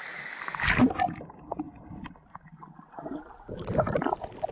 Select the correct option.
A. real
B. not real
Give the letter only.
A